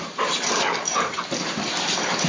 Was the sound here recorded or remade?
recorded